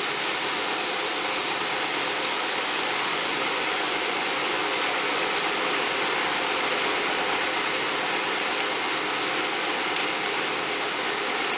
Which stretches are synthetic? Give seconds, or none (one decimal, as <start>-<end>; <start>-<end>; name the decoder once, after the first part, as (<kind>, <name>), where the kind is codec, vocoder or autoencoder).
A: 2.3-5.4 (vocoder, Vocos)